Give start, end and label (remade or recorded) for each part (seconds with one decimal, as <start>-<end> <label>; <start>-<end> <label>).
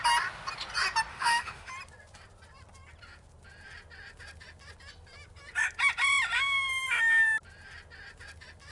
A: 0.0-1.1 recorded; 1.1-1.7 remade; 1.7-8.7 recorded